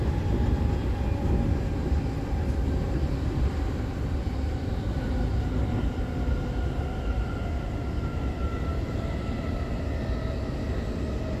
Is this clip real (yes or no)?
yes